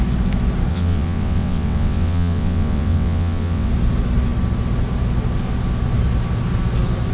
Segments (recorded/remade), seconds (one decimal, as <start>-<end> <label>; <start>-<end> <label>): 0.0-0.7 recorded; 0.7-3.7 remade; 3.7-7.1 recorded